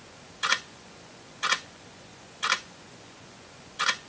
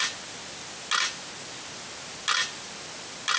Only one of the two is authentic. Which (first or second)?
second